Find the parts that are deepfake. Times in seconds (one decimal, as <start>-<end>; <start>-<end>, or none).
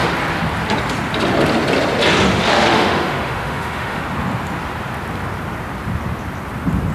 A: 2.3-4.0